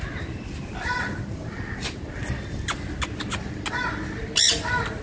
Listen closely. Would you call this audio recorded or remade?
recorded